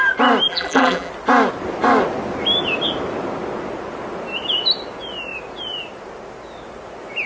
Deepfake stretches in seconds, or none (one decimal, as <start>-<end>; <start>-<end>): 0.5-1.1